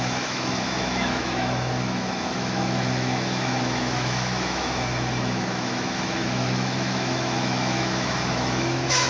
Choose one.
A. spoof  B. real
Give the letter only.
A